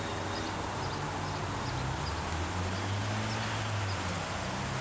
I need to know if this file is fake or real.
real